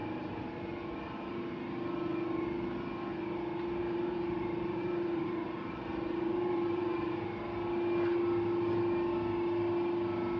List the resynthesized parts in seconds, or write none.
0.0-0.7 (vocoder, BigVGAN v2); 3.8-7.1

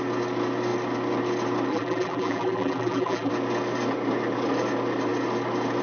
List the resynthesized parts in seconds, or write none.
1.7-3.3 (vocoder, BigVGAN v2)